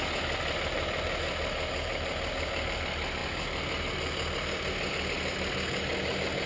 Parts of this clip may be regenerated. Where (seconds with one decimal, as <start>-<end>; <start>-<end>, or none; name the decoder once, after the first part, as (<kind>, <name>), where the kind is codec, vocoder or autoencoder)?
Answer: none